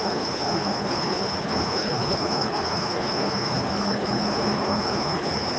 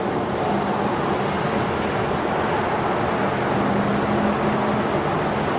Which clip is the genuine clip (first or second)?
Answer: second